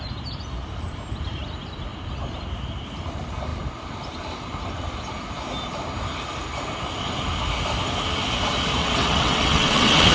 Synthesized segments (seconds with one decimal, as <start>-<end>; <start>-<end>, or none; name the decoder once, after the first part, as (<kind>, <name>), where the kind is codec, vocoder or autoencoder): 8.8-10.1 (vocoder, WaveNeXt)